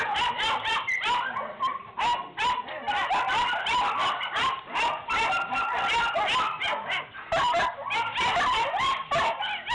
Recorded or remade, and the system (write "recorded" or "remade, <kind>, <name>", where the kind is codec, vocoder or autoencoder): recorded